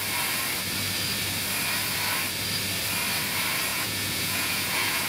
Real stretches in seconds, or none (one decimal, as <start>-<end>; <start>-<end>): 0.0-3.7